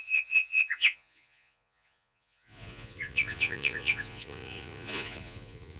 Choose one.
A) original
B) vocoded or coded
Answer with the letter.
B